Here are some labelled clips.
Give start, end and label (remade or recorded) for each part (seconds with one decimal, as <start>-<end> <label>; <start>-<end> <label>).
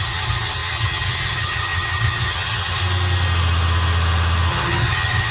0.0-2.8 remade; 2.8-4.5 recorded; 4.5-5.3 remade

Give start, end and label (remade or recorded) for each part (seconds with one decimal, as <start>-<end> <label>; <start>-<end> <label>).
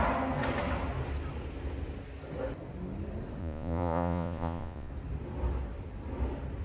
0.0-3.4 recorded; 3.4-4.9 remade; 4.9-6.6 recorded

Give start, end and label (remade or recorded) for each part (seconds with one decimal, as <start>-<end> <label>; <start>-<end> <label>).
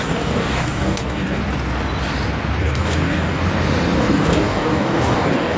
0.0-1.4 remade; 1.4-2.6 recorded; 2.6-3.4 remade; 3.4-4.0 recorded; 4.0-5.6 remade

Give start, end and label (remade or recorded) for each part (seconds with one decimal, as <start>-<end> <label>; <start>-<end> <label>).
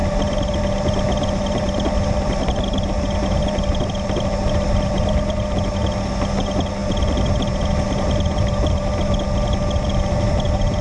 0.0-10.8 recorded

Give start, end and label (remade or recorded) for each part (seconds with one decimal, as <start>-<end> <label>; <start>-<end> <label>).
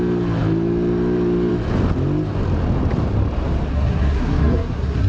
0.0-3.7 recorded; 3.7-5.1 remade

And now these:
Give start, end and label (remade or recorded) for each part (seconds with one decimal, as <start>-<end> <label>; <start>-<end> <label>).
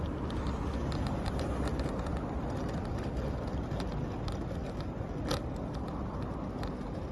0.0-7.1 recorded